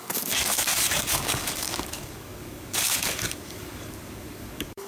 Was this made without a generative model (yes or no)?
no